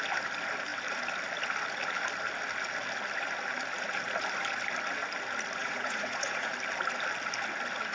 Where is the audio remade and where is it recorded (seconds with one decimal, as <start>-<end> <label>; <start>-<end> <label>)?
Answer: 0.0-5.6 recorded; 5.6-6.5 remade; 6.5-7.9 recorded